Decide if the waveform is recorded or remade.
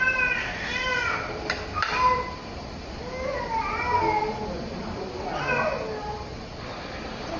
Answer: recorded